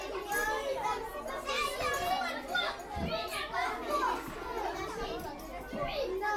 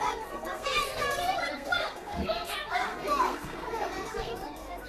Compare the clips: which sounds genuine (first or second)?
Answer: first